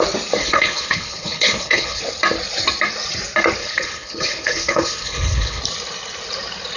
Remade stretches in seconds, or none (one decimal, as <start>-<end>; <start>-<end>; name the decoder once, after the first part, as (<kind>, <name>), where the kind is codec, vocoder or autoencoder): 0.4-2.0 (codec, HILCodec); 3.6-5.6